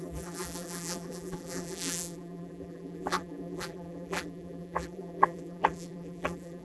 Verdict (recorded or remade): remade